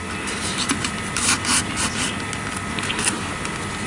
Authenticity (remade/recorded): recorded